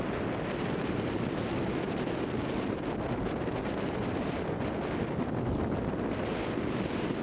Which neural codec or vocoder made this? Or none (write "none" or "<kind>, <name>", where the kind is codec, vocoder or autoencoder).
none